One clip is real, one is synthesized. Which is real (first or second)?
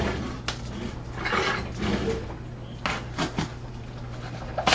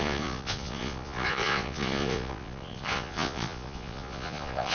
first